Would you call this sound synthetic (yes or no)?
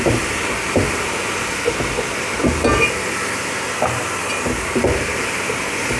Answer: no